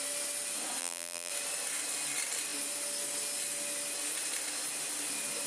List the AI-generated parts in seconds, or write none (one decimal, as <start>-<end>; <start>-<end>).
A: 0.8-1.3